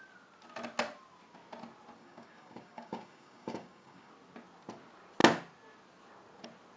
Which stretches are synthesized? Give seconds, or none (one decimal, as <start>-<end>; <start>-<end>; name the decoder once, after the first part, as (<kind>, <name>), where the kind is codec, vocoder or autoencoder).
2.0-4.1 (codec, DAC)